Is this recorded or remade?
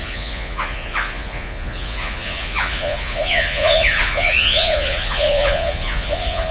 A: remade